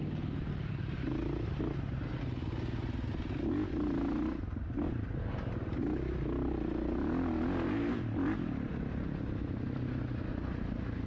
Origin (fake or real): real